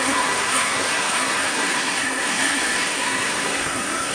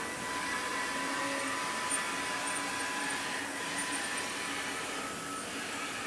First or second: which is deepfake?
first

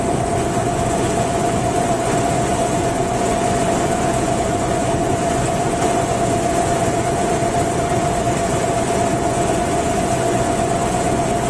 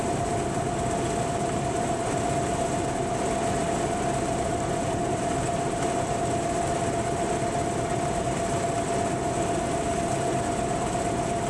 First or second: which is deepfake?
first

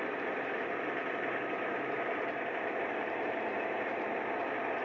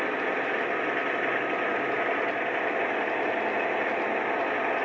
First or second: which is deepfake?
first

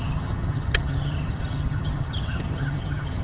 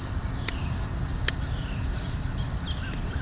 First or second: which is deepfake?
first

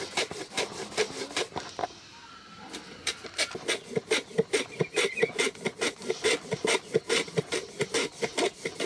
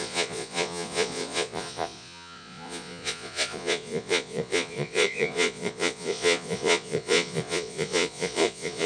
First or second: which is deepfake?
second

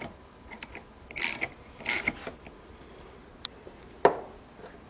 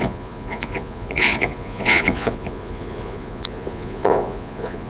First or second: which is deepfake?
second